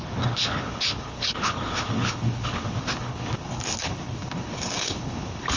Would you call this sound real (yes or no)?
no